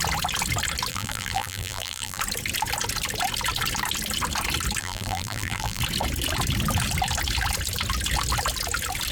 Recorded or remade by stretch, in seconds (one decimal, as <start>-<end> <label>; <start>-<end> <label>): 0.0-0.9 recorded; 0.9-2.2 remade; 2.2-4.8 recorded; 4.8-5.8 remade; 5.8-9.1 recorded

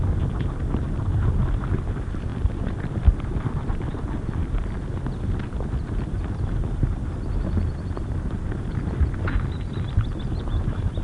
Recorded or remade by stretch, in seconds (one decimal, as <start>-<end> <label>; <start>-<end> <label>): 0.0-2.3 recorded; 2.3-4.5 remade; 4.5-11.0 recorded

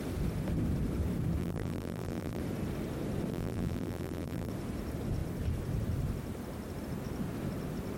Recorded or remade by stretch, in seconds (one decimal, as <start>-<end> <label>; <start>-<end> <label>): 0.0-1.4 recorded; 1.4-2.4 remade; 2.4-3.3 recorded; 3.3-4.5 remade; 4.5-8.0 recorded

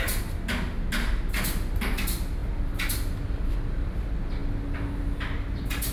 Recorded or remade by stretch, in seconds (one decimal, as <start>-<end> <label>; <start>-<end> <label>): 0.0-5.9 recorded

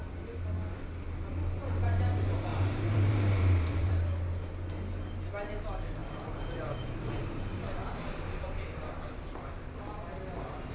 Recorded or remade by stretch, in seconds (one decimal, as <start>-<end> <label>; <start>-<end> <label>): 0.0-2.5 recorded; 2.5-3.9 remade; 3.9-6.0 recorded; 6.0-7.1 remade; 7.1-7.8 recorded; 7.8-8.6 remade; 8.6-10.7 recorded

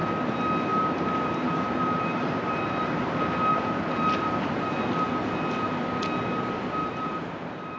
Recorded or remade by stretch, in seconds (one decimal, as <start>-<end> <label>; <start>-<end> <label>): 0.0-0.7 recorded; 0.7-3.1 remade; 3.1-3.5 recorded; 3.5-4.6 remade; 4.6-6.8 recorded; 6.8-7.8 remade

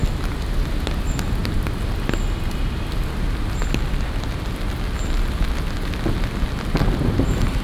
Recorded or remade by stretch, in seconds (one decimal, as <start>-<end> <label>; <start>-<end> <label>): 0.0-7.6 recorded